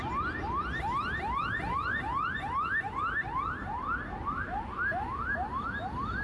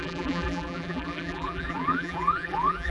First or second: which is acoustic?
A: first